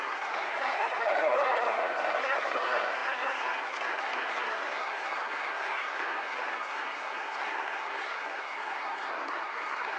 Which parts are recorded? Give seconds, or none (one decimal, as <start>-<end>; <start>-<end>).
none